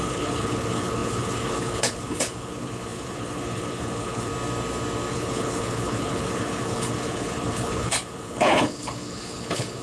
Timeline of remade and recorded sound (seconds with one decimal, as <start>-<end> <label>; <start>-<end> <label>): 0.0-4.3 remade; 4.3-5.1 recorded; 5.1-9.8 remade